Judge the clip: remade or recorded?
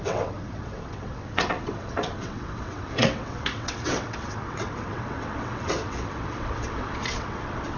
remade